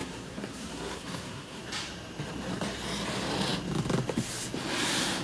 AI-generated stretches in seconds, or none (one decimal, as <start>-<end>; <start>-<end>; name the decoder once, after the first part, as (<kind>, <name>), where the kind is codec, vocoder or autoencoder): 0.0-1.6 (codec, SNAC)